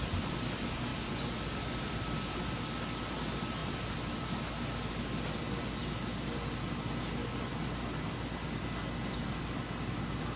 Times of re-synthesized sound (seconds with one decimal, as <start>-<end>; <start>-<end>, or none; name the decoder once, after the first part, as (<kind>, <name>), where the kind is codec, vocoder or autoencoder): none